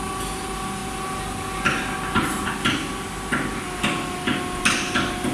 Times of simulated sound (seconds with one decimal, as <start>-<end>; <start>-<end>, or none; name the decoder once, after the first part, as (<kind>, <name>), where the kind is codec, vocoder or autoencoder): none